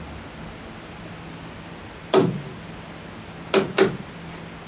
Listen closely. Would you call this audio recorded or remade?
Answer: recorded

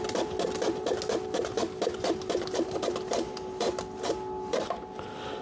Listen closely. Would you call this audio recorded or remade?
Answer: recorded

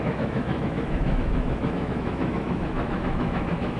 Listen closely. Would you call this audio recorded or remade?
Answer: remade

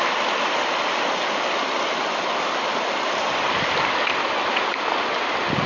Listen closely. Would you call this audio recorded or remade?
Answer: recorded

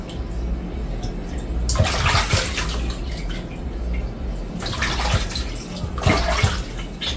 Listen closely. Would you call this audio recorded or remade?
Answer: recorded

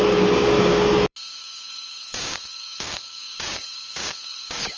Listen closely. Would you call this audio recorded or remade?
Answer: remade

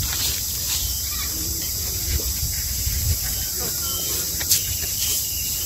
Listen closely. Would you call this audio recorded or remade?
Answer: remade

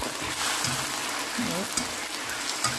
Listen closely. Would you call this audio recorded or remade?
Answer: recorded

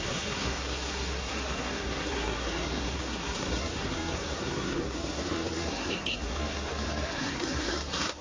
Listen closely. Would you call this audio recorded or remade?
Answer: remade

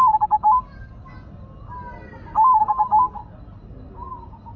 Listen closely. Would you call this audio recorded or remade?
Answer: recorded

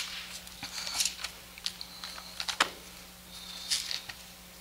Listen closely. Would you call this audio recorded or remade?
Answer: recorded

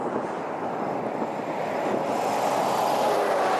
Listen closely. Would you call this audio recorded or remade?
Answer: recorded